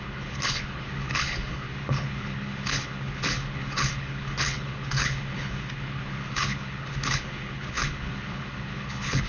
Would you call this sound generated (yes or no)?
yes